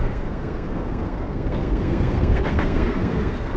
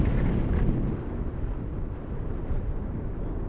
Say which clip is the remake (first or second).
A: first